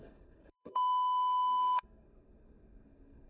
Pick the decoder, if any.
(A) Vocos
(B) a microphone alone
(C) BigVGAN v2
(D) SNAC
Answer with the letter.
D